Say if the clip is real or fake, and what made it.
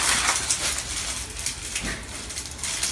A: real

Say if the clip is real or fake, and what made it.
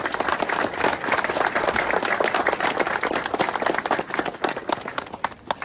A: real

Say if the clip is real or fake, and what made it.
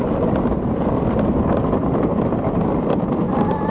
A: real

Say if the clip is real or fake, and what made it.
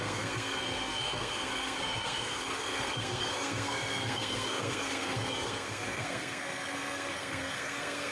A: fake, codec, SNAC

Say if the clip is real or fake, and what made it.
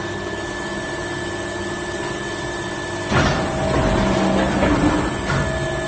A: real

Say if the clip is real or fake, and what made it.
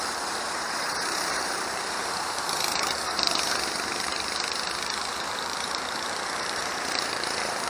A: fake, vocoder, BigVGAN v2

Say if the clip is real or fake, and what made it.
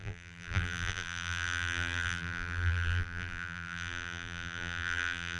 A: fake, vocoder, BigVGAN v2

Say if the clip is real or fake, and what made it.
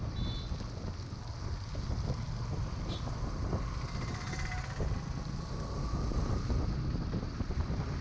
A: real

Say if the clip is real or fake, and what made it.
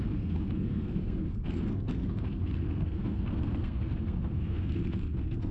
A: fake, codec, SNAC